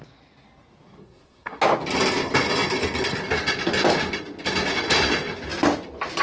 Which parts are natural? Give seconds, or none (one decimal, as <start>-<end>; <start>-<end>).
0.0-1.0; 1.6-6.2